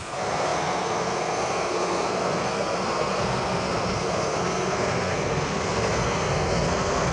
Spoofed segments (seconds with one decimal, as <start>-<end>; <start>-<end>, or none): 0.0-7.1